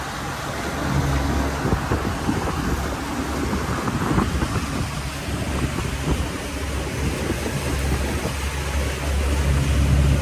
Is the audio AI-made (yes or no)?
no